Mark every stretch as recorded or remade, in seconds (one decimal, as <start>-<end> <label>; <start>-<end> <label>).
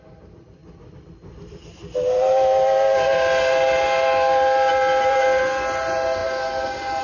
0.0-7.0 recorded